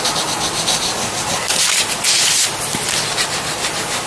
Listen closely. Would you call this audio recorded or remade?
recorded